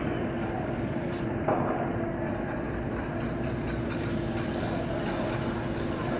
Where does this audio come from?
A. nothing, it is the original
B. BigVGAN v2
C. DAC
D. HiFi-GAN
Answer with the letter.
B